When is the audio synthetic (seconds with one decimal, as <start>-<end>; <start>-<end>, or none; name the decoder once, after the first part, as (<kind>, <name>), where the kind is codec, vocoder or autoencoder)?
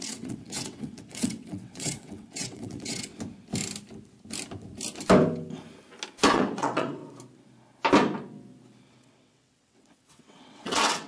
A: 0.0-3.1 (vocoder, WaveNeXt); 6.3-7.0; 8.9-11.1